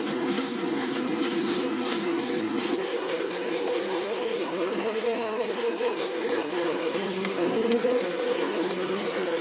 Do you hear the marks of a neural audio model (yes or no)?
yes